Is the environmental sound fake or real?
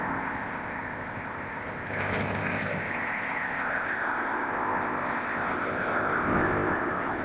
fake